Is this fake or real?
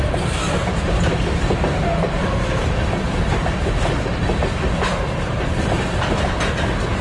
real